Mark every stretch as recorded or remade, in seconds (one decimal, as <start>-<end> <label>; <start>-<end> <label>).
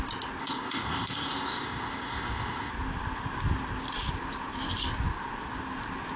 0.0-0.4 recorded; 0.4-2.7 remade; 2.7-6.2 recorded